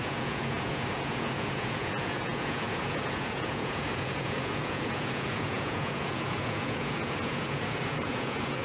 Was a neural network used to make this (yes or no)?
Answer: yes